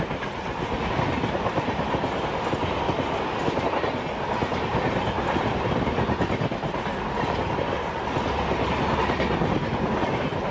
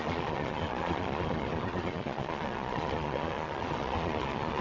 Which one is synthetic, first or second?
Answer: second